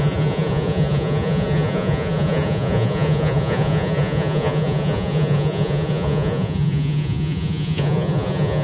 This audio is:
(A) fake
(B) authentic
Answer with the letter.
A